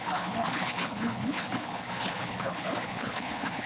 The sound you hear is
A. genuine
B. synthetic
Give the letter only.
B